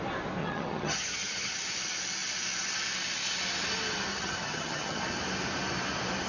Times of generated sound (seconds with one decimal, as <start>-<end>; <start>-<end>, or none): 0.4-1.5; 4.1-5.0